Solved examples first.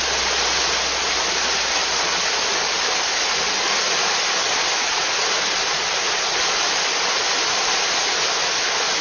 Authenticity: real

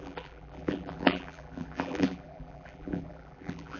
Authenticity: fake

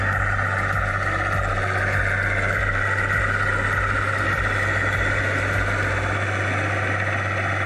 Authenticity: real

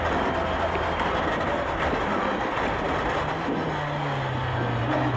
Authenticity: real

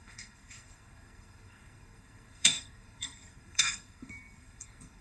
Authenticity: fake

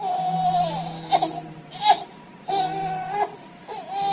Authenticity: real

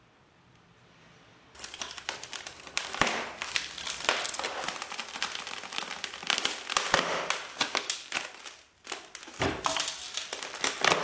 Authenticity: fake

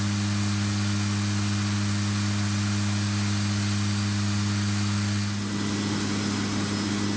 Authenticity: real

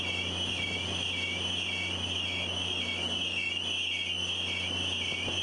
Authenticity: real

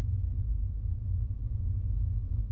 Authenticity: real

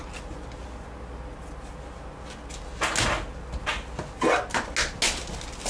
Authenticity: real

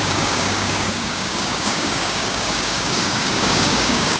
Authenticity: fake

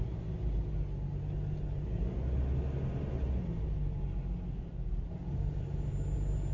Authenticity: real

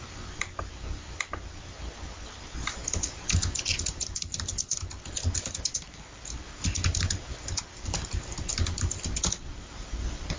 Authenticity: real